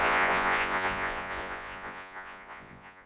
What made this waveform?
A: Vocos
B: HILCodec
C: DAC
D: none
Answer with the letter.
A